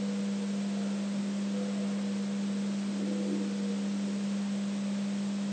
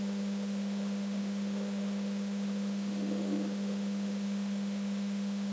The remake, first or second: second